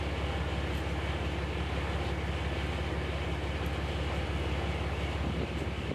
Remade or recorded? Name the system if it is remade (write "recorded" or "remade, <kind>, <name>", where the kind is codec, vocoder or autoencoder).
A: recorded